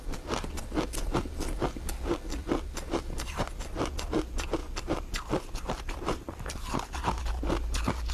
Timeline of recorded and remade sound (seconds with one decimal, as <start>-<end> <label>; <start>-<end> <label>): 0.0-2.4 recorded; 2.4-3.1 remade; 3.1-4.6 recorded; 4.6-7.3 remade; 7.3-8.1 recorded